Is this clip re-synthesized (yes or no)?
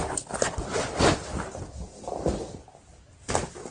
no